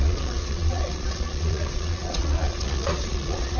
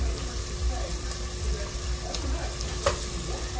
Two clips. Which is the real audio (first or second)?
second